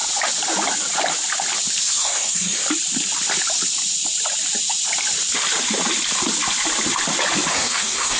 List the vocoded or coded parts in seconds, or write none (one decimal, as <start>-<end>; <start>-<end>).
1.8-2.6; 7.5-8.2

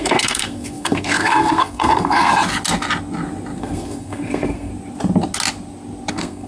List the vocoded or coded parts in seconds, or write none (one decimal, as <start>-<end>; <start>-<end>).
0.0-2.3; 3.6-4.7; 6.1-6.5

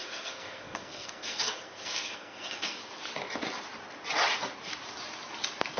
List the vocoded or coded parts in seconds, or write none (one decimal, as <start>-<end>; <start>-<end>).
0.0-2.8

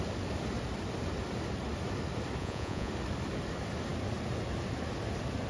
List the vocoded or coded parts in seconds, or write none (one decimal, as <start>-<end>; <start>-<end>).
2.4-2.9

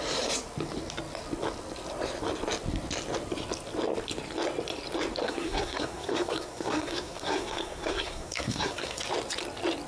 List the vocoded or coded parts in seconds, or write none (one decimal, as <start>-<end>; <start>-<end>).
5.2-9.0

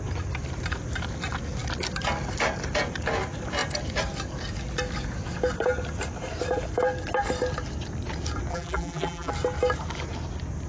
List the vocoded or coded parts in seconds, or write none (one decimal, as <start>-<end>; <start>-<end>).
8.5-9.3

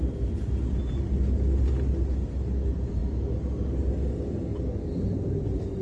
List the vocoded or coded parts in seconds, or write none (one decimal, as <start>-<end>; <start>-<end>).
none

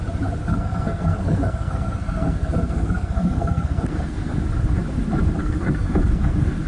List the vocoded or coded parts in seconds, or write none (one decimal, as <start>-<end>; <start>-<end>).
0.4-4.4; 5.4-6.7